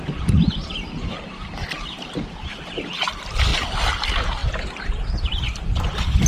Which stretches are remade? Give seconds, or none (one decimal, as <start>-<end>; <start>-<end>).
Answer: 3.5-4.0